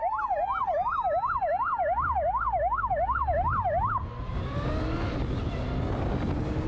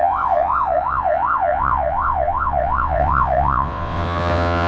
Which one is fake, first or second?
second